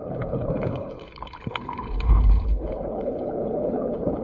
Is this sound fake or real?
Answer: fake